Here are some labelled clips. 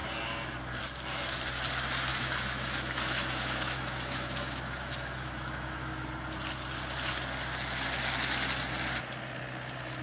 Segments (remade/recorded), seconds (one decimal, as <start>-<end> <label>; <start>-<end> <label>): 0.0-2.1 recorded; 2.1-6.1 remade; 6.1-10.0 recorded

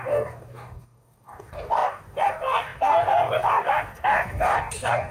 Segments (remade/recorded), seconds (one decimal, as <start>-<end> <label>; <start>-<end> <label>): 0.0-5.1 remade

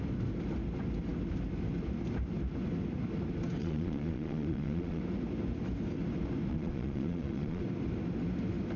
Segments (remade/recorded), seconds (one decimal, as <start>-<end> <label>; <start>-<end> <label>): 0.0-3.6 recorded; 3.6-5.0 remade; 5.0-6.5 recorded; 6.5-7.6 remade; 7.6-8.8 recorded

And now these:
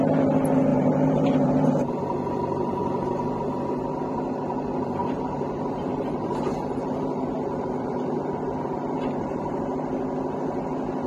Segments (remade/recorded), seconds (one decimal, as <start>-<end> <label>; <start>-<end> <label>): 0.0-0.7 recorded; 0.7-1.9 remade; 1.9-5.0 recorded; 5.0-9.9 remade; 9.9-11.1 recorded

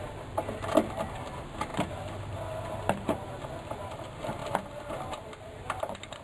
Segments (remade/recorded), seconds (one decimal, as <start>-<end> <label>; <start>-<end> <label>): 0.0-6.2 recorded

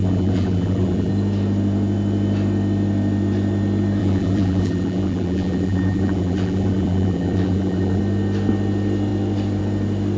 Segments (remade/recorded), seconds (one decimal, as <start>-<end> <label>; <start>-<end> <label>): 0.0-1.1 remade; 1.1-4.0 recorded; 4.0-8.0 remade; 8.0-10.2 recorded